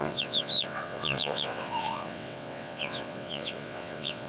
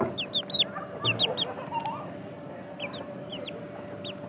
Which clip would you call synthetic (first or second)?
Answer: first